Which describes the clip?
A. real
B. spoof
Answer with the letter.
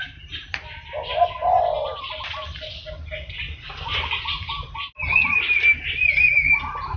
A